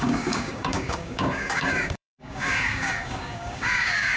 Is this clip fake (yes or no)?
yes